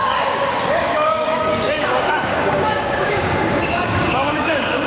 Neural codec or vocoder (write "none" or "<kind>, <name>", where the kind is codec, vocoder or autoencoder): codec, DAC